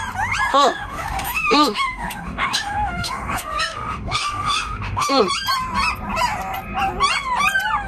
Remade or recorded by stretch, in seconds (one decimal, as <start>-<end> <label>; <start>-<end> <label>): 0.0-0.5 recorded; 0.5-5.2 remade; 5.2-7.9 recorded